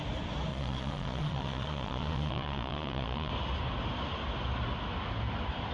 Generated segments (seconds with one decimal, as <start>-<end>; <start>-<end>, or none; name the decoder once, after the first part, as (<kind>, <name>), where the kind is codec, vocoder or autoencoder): 0.5-3.3 (vocoder, Vocos)